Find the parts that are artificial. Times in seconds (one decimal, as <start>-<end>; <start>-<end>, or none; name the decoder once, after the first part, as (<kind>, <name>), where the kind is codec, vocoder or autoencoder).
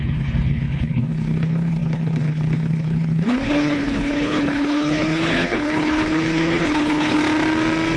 0.0-7.2 (codec, HILCodec)